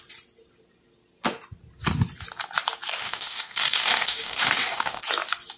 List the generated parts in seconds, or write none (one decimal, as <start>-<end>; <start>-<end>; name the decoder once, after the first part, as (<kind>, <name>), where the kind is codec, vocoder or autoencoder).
3.0-5.0 (codec, DAC)